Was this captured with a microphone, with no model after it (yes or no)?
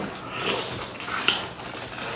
yes